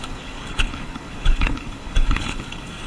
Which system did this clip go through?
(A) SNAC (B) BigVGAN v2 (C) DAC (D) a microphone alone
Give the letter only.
C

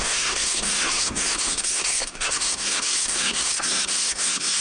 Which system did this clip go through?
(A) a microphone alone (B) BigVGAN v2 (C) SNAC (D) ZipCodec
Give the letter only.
C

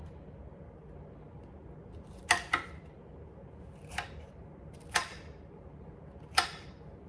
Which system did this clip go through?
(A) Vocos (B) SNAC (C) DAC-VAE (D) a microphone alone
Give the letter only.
D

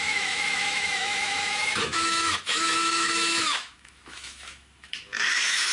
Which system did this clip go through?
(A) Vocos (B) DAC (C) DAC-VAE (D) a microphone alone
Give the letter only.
C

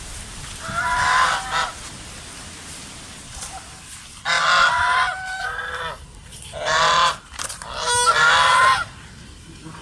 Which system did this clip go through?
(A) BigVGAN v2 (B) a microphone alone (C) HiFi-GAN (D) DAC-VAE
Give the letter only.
B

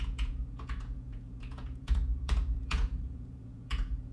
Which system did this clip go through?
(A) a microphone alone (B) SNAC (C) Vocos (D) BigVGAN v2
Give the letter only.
C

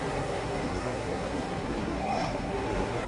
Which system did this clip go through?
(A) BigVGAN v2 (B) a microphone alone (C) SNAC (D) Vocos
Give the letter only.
C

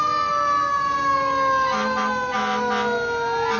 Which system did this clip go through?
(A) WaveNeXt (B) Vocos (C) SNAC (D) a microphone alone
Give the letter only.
D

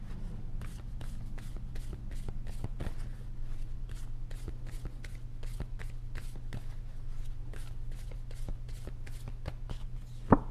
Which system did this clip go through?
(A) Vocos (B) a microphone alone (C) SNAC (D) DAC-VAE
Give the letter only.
B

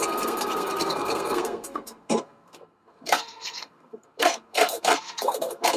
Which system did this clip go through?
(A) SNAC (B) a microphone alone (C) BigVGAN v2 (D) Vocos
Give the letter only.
A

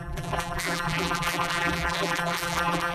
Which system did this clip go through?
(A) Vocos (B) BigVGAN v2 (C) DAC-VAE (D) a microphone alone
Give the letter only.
B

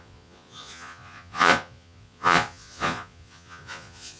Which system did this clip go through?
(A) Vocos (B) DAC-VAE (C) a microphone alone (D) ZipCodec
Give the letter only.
A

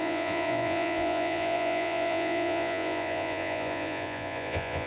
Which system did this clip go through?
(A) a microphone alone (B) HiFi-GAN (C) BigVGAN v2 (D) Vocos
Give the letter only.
D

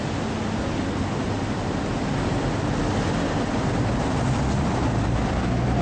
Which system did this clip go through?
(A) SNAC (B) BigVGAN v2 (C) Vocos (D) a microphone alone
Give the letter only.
D